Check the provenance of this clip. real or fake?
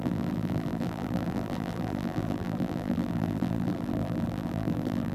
fake